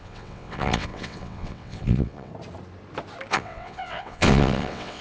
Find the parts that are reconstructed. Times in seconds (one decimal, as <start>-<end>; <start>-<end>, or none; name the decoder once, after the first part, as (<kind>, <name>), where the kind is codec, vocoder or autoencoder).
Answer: 0.0-2.3 (vocoder, WaveNeXt); 3.3-5.0